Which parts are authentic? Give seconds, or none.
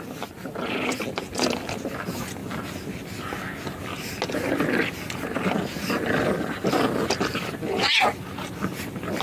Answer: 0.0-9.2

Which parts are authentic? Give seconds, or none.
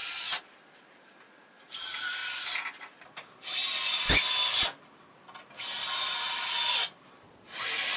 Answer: 0.0-1.8; 2.2-2.8; 3.6-7.3